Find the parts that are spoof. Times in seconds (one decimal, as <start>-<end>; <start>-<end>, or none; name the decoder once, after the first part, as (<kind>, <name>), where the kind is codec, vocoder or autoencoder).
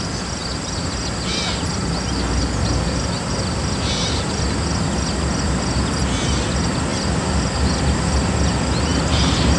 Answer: none